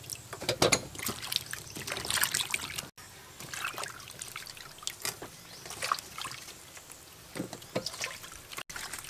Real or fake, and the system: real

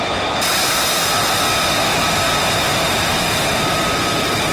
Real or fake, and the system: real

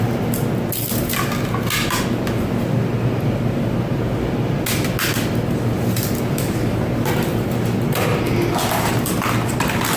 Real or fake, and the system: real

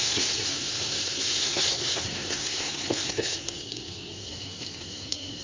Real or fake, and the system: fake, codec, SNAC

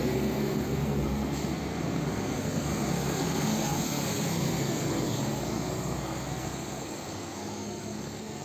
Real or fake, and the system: fake, codec, SNAC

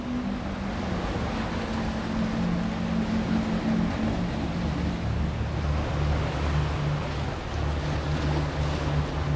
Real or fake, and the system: real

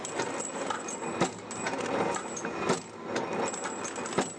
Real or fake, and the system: real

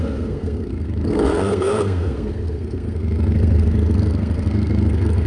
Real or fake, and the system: fake, codec, SNAC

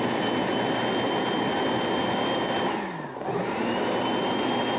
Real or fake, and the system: real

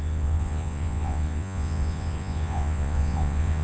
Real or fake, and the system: fake, vocoder, Vocos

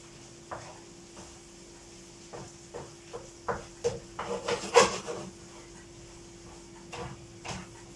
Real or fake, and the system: real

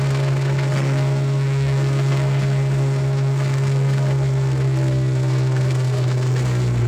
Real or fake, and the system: fake, codec, SNAC